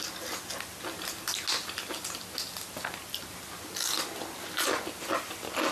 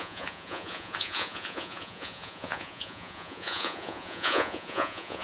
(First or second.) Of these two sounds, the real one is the first